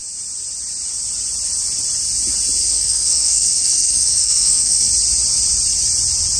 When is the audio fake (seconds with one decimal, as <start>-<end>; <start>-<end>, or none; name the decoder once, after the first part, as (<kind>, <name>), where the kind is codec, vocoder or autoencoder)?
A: 2.6-4.9 (codec, SNAC)